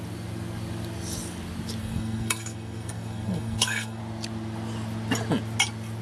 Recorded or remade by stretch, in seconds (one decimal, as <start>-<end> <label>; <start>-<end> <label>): 0.0-1.8 recorded; 1.8-4.0 remade; 4.0-6.0 recorded